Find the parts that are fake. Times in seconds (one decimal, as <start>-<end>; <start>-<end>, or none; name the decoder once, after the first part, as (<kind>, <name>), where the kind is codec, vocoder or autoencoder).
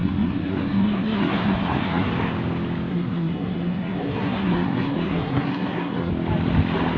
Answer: 0.0-2.1 (codec, SNAC); 2.9-6.1